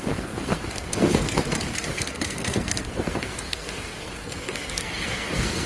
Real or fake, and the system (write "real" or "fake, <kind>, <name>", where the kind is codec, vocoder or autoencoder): fake, codec, SNAC